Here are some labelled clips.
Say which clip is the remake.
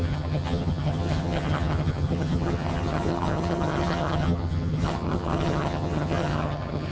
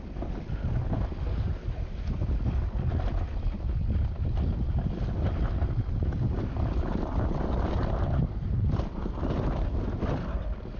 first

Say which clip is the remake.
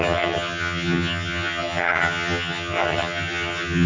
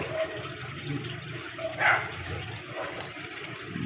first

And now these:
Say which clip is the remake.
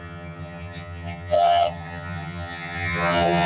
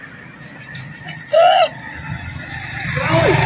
first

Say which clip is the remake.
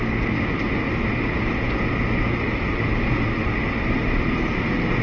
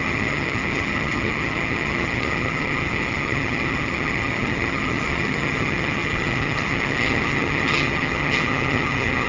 second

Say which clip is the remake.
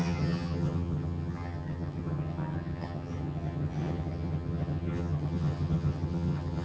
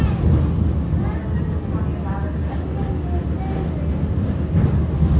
first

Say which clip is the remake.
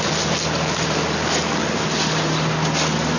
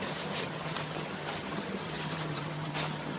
second